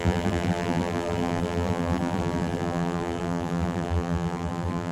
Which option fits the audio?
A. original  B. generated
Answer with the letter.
B